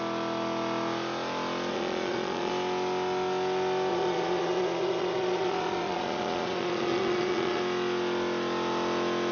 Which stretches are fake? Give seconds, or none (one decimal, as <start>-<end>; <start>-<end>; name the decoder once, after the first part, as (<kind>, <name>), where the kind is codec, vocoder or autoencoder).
1.7-2.5 (vocoder, Vocos); 3.9-7.6